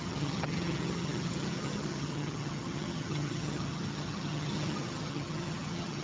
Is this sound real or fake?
fake